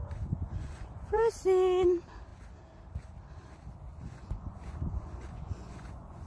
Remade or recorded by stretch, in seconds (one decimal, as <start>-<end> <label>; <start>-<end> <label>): 0.0-1.3 remade; 1.3-3.9 recorded; 3.9-6.3 remade